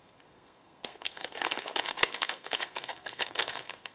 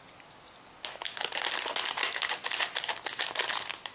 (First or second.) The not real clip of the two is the first